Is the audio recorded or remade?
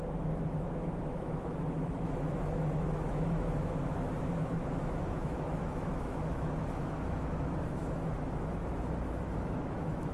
remade